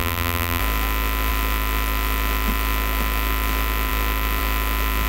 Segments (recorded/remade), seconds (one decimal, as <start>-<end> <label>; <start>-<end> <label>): 0.0-0.6 remade; 0.6-5.1 recorded